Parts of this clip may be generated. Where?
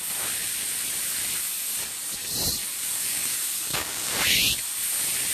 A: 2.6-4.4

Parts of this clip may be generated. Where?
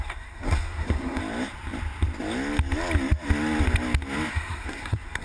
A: 0.0-1.2; 4.3-5.2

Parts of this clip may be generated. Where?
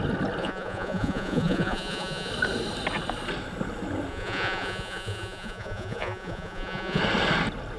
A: 0.4-2.3; 4.1-7.0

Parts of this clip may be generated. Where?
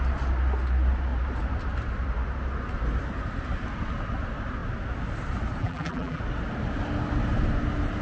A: 5.6-6.2